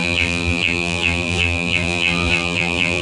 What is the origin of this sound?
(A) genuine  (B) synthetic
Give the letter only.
B